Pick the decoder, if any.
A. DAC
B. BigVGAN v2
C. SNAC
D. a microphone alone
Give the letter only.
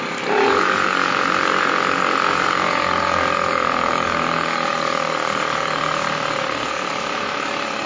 A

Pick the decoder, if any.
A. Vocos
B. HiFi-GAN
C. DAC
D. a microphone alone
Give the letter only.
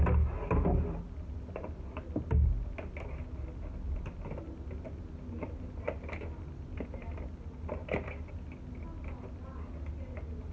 D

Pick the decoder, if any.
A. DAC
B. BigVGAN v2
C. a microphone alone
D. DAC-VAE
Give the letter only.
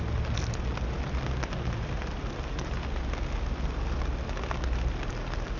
C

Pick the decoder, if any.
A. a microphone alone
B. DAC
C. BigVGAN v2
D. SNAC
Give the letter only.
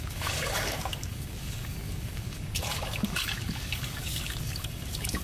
B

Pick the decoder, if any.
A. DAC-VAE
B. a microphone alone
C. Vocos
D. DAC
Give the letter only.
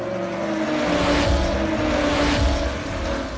B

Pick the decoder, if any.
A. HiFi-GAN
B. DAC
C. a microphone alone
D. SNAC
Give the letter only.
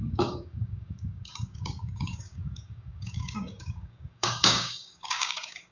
B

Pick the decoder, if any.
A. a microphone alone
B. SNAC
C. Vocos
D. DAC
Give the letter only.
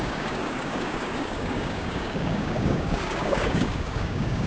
D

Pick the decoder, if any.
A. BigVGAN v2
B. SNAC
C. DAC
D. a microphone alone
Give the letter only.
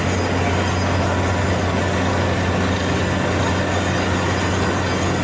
D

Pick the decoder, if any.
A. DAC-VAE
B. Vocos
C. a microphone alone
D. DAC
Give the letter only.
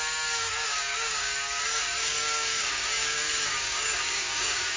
D